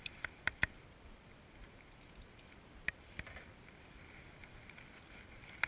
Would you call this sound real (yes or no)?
yes